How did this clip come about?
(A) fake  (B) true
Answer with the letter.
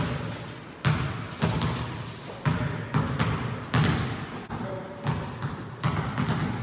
B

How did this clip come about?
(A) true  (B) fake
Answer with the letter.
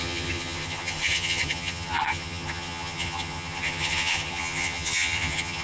B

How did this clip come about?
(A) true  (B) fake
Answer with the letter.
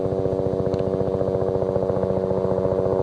A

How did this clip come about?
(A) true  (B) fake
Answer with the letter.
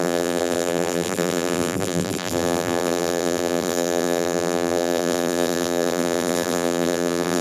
B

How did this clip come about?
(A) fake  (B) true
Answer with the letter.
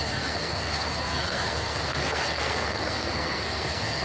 A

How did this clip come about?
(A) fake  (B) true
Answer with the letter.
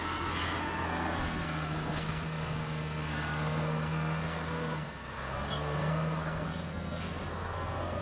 A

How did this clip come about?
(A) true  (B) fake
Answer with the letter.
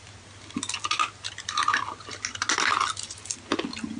A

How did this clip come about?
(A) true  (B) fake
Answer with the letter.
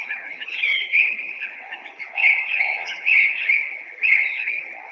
B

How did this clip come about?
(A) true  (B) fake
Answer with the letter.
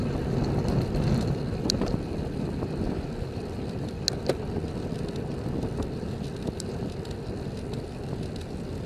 A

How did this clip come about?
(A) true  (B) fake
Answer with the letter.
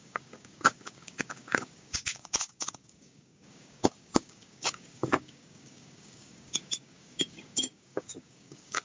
B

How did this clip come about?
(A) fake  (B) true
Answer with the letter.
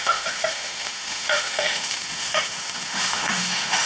A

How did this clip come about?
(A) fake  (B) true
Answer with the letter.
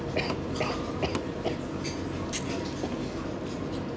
B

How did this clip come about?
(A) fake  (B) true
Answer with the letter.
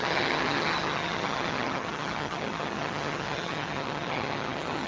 A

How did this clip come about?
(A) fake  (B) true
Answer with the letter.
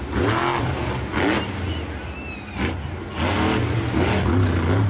B